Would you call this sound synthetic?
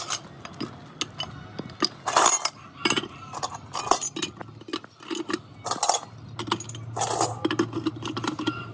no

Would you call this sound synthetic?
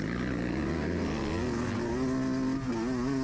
no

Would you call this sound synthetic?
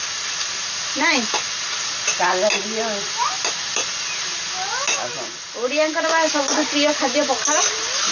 no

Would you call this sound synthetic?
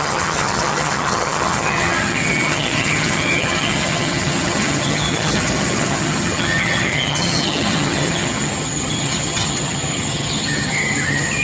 yes